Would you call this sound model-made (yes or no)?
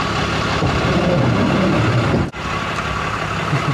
no